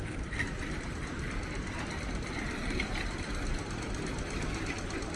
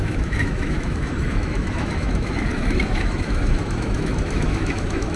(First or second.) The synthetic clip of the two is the second